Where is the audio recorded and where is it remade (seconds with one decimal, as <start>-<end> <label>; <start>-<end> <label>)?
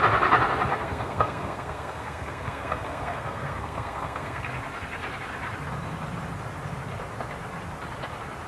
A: 0.0-0.7 recorded; 0.7-4.5 remade; 4.5-8.5 recorded